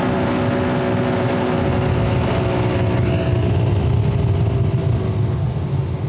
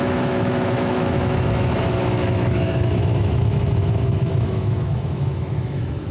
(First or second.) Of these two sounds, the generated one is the second